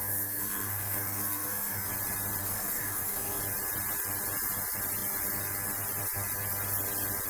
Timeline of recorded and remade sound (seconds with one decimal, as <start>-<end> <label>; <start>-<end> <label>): 0.0-1.9 remade; 1.9-2.4 recorded; 2.4-3.4 remade; 3.4-7.3 recorded